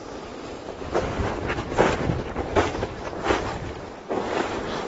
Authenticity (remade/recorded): recorded